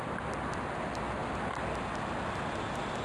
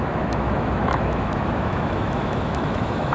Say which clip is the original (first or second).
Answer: first